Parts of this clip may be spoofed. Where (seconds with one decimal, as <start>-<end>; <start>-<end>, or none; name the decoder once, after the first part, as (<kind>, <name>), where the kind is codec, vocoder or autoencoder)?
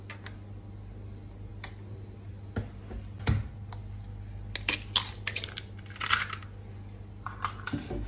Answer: none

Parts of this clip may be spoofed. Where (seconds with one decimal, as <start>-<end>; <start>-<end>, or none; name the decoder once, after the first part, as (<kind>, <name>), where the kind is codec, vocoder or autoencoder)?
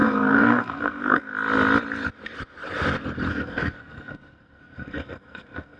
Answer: 0.0-1.3 (codec, SNAC); 3.3-5.8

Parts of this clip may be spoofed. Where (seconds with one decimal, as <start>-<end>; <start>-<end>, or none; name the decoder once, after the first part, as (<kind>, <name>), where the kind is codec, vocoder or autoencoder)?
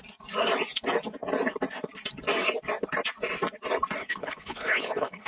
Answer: 4.0-5.3 (codec, HILCodec)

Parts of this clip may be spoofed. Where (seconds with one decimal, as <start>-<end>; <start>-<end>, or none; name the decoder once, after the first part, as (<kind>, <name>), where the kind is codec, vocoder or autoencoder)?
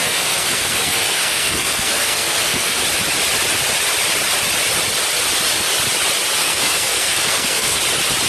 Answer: 0.0-2.8 (codec, SNAC); 6.4-7.8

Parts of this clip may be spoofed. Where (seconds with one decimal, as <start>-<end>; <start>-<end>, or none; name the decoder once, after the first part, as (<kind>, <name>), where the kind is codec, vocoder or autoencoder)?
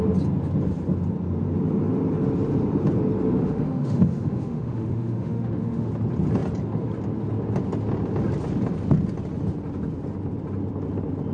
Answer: 3.4-5.9 (autoencoder, DAC-VAE)